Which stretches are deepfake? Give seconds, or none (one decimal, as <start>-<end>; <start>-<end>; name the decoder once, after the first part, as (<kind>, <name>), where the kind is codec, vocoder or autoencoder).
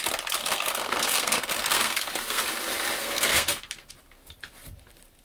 0.4-2.4 (codec, SNAC); 3.0-3.9